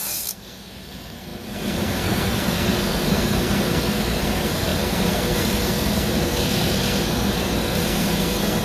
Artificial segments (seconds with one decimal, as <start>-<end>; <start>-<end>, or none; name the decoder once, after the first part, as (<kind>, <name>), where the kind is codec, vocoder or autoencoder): 0.0-8.6 (codec, SNAC)